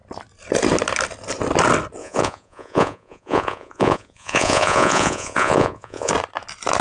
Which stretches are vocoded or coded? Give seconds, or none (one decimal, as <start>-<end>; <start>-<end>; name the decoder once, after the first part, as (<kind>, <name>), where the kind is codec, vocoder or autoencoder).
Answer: 2.0-6.1 (vocoder, Vocos)